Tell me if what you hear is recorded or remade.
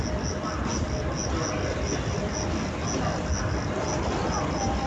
recorded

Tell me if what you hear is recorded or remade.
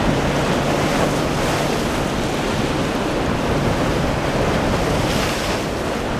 recorded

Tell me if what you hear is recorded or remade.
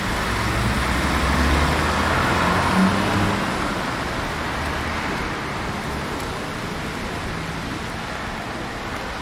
recorded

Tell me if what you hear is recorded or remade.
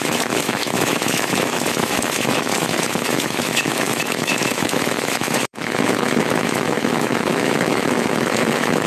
remade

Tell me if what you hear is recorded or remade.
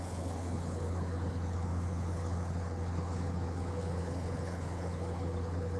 remade